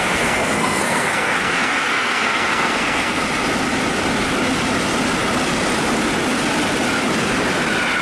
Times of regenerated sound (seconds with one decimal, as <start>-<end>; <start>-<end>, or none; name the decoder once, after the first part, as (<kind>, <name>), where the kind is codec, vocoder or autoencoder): 0.0-3.2 (codec, SNAC)